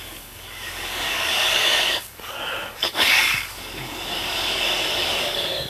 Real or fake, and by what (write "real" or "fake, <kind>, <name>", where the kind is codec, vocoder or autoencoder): fake, codec, DAC